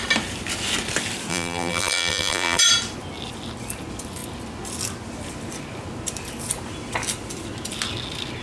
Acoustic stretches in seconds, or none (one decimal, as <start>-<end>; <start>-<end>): 0.0-1.3; 2.6-8.4